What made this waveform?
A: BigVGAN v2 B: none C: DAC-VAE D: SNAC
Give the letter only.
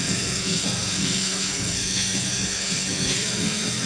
D